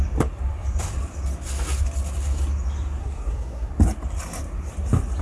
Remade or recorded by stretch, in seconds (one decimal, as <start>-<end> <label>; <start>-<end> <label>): 0.0-3.0 recorded; 3.0-3.7 remade; 3.7-5.2 recorded